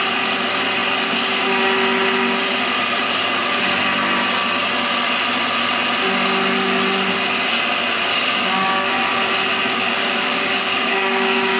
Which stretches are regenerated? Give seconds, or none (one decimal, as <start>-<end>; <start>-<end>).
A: 8.1-8.9; 9.5-11.6